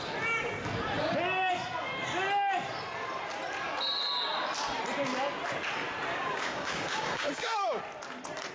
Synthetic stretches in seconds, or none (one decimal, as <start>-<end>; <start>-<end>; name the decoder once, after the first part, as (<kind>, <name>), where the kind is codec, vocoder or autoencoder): 6.1-7.8 (codec, DAC)